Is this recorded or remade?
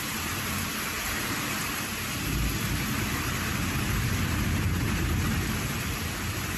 remade